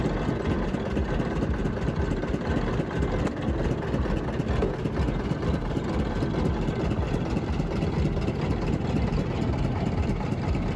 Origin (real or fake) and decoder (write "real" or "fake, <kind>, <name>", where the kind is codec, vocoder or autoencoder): real